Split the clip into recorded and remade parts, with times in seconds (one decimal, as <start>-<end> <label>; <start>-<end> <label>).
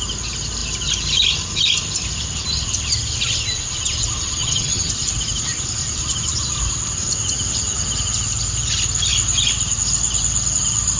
0.0-4.4 recorded; 4.4-4.9 remade; 4.9-11.0 recorded